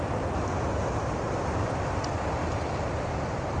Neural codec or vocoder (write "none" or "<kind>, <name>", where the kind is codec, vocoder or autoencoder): none